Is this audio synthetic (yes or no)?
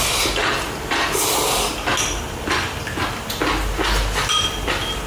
yes